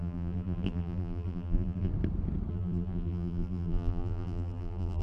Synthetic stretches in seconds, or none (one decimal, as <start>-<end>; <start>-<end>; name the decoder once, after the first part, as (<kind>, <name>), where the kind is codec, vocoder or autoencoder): 0.0-1.9 (vocoder, BigVGAN v2); 2.5-5.0